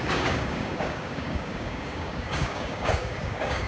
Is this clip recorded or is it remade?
remade